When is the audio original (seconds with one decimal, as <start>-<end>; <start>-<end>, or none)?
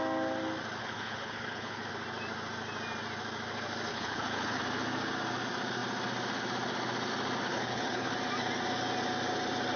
0.0-0.8; 1.9-3.9; 4.6-7.5; 8.1-9.8